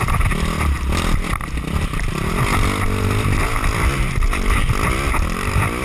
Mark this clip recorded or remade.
recorded